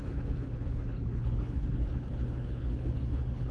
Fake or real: fake